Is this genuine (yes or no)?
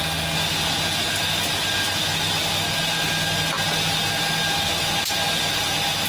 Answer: yes